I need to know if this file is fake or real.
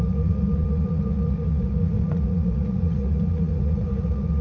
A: fake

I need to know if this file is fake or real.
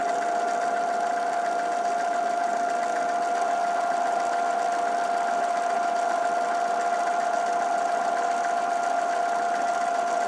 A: real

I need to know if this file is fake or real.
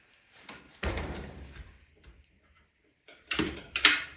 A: fake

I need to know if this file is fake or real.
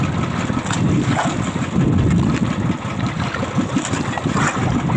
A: real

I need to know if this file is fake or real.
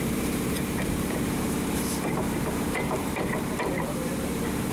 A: fake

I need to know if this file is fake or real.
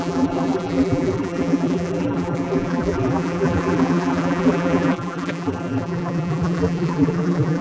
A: fake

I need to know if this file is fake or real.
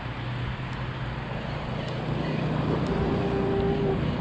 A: real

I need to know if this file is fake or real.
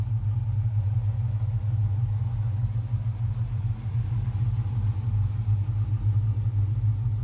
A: real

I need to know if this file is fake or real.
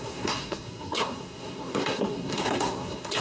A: fake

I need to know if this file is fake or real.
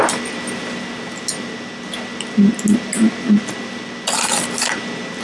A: real